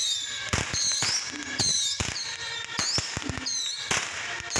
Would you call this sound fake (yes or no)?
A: no